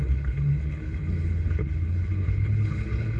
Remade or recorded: remade